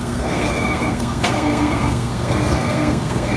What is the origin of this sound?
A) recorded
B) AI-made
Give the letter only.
B